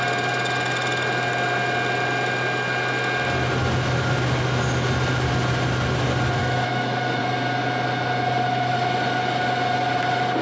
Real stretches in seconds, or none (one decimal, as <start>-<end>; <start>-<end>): 0.0-6.4; 7.2-10.4